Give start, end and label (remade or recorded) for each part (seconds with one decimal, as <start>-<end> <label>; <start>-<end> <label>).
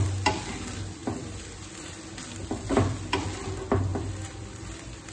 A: 0.0-1.0 recorded; 1.0-2.0 remade; 2.0-3.9 recorded; 3.9-5.1 remade